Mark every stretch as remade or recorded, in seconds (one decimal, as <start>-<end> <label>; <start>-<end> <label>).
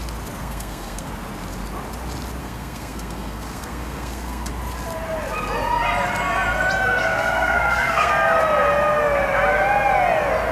0.0-0.4 recorded; 0.4-1.1 remade; 1.1-2.4 recorded; 2.4-4.5 remade; 4.5-7.0 recorded; 7.0-8.1 remade; 8.1-10.5 recorded